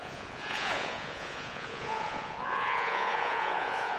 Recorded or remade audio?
remade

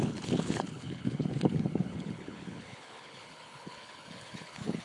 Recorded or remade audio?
remade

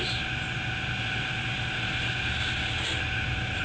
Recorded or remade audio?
recorded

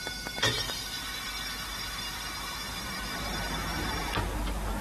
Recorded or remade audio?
recorded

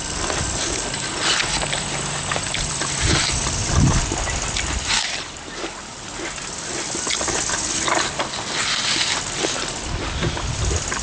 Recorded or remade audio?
recorded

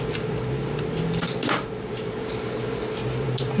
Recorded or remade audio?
remade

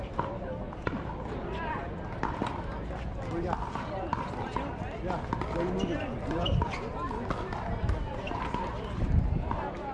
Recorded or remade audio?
recorded